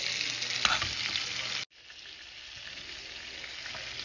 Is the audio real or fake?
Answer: real